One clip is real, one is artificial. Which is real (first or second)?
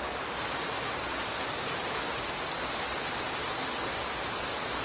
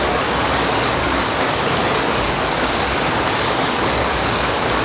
first